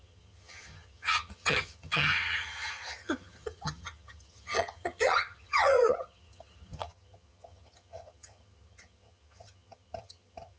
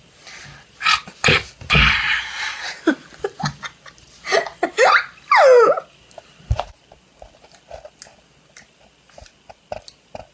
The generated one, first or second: first